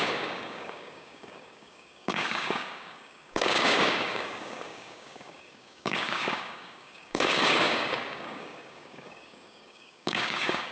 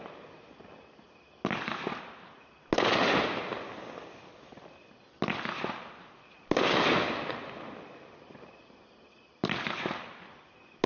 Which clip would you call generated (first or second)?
first